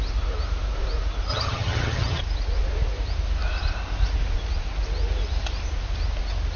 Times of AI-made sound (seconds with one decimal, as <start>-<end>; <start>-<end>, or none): 1.3-2.2